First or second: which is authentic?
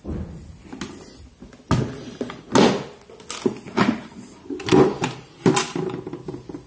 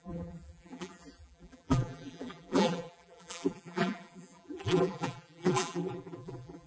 first